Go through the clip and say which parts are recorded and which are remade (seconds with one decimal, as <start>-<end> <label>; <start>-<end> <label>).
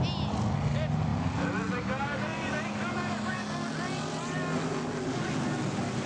0.0-6.1 recorded